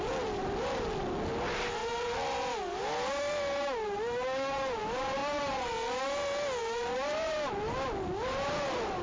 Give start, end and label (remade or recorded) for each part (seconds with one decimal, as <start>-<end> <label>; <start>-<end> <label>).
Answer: 0.0-9.0 recorded

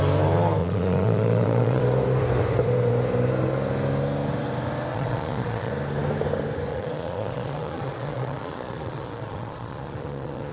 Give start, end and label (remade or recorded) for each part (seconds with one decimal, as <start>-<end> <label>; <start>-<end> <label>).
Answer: 0.0-0.6 recorded; 0.6-1.8 remade; 1.8-4.9 recorded; 4.9-5.7 remade; 5.7-6.7 recorded; 6.7-10.5 remade

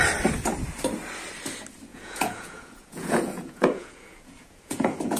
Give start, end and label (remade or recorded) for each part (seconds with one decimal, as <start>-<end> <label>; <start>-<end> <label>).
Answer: 0.0-1.9 recorded; 1.9-5.2 remade

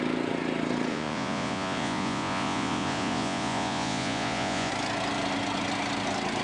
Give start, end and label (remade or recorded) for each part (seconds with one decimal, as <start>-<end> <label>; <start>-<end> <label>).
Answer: 0.0-0.9 recorded; 0.9-4.7 remade; 4.7-6.4 recorded

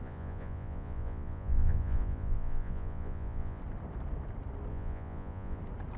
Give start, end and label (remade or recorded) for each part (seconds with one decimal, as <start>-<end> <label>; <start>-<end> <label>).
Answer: 0.0-3.6 remade; 3.6-4.7 recorded; 4.7-5.6 remade; 5.6-6.0 recorded

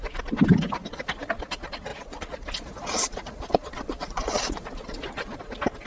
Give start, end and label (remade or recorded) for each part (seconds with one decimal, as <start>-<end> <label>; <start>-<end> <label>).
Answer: 0.0-1.9 recorded; 1.9-5.4 remade; 5.4-5.9 recorded

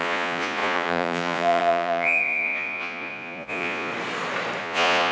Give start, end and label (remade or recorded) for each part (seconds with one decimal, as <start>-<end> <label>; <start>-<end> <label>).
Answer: 0.0-3.9 remade; 3.9-4.6 recorded; 4.6-5.1 remade